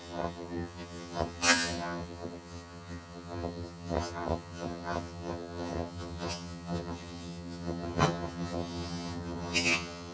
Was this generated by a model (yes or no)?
yes